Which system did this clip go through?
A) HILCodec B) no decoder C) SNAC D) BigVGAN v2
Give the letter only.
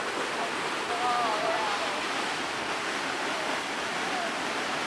B